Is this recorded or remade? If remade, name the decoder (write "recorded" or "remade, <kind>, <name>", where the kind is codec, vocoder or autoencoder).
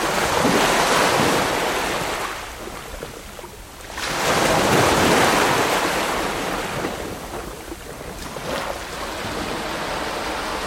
recorded